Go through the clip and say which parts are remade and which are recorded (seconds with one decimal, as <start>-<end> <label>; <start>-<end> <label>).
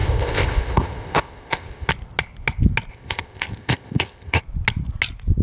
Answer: 0.0-1.9 remade; 1.9-2.9 recorded; 2.9-4.4 remade; 4.4-5.4 recorded